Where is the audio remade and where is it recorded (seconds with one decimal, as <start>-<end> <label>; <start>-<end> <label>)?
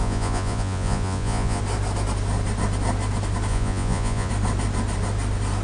0.0-1.6 remade; 1.6-3.5 recorded; 3.5-4.3 remade; 4.3-5.6 recorded